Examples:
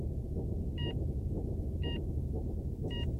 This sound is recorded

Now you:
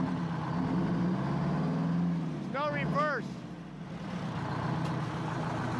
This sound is recorded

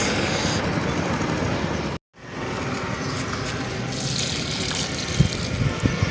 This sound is recorded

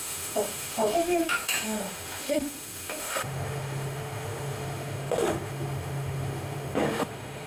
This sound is remade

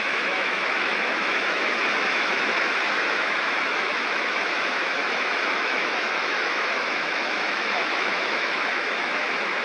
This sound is remade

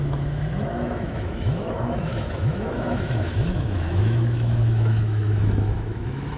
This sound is remade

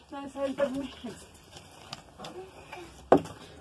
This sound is recorded